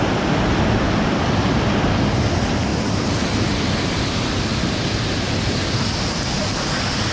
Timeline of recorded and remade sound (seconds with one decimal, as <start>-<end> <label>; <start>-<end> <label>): 0.0-7.1 recorded